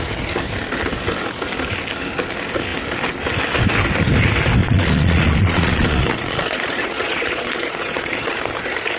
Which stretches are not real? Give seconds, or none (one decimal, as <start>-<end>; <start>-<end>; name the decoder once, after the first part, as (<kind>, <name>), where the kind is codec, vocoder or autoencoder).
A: 4.6-8.3 (vocoder, Vocos)